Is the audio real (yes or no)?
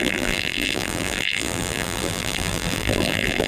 no